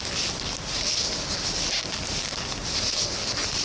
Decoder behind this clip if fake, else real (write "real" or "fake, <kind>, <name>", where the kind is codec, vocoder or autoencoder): real